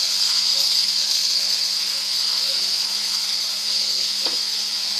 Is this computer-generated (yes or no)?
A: yes